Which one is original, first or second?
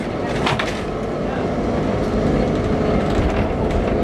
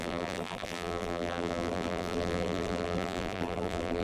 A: first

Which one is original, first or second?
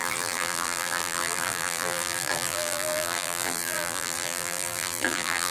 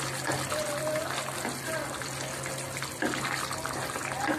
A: second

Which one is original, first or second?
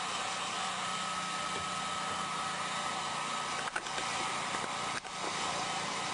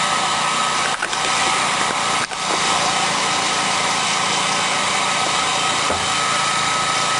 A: first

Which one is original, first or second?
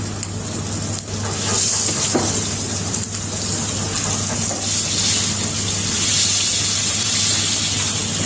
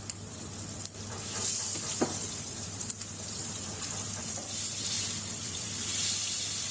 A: first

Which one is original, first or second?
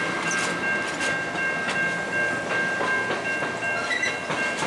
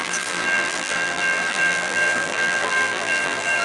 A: first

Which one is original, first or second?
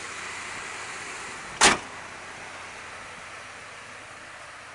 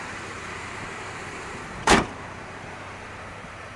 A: first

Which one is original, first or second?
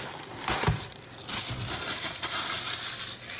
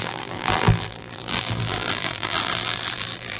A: first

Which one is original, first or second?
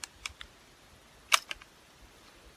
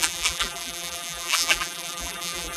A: first